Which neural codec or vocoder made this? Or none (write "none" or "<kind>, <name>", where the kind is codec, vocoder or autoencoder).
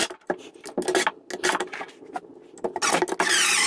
none